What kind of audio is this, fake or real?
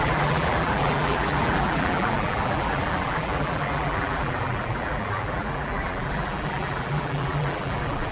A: fake